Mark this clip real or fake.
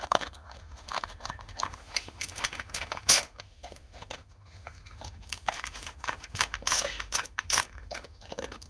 fake